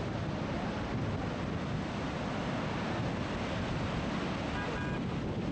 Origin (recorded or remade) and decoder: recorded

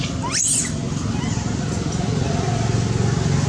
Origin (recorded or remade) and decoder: recorded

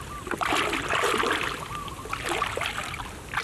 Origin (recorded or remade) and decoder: recorded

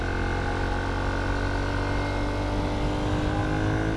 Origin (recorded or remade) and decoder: recorded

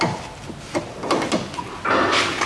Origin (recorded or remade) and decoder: recorded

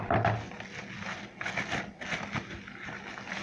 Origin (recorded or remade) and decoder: recorded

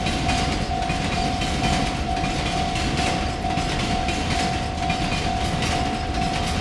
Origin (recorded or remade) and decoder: recorded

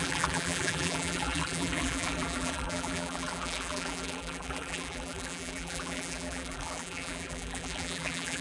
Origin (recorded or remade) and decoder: remade, vocoder, BigVGAN v2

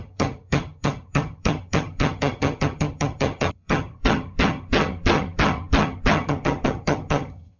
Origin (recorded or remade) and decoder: remade, vocoder, HiFi-GAN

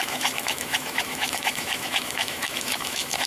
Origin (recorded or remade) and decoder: remade, autoencoder, DAC-VAE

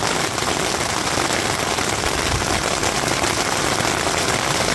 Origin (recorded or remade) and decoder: recorded